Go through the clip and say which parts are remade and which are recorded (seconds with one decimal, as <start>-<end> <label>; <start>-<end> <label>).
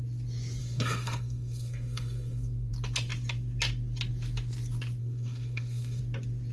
0.0-0.6 recorded; 0.6-2.7 remade; 2.7-5.0 recorded; 5.0-6.0 remade; 6.0-6.5 recorded